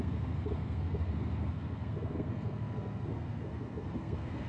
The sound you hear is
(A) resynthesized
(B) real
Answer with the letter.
A